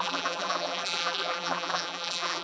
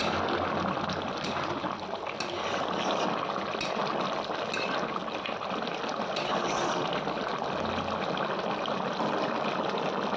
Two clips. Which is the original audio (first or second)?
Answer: second